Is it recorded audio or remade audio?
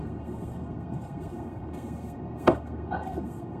remade